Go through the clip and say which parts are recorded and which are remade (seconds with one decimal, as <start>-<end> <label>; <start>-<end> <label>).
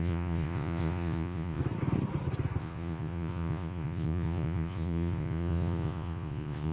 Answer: 0.0-1.6 remade; 1.6-2.6 recorded; 2.6-6.7 remade